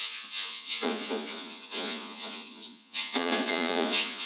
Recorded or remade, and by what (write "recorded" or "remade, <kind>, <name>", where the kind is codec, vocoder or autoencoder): remade, vocoder, Vocos